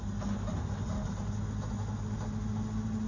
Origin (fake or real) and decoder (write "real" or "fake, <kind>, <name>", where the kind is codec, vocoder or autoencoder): real